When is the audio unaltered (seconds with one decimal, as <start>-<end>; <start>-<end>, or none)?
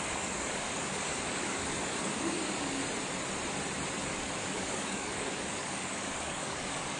2.8-4.1